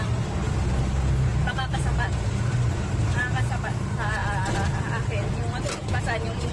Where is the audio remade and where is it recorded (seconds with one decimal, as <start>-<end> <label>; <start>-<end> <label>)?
0.0-4.2 remade; 4.2-6.0 recorded; 6.0-6.5 remade